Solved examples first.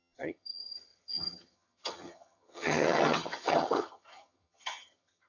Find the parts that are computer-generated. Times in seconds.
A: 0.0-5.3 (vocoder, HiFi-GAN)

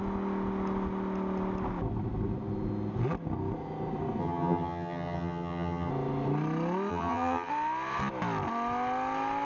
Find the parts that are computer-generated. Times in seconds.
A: 4.2-5.9 (vocoder, HiFi-GAN); 6.9-7.5

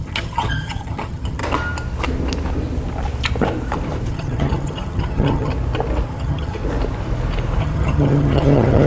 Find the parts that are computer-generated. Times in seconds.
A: 0.0-1.4 (vocoder, HiFi-GAN); 4.1-5.5; 6.1-6.6; 7.6-8.9

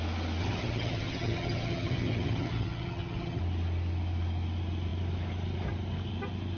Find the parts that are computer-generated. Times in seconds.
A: 0.4-3.4 (vocoder, HiFi-GAN)